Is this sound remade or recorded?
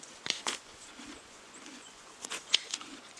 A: remade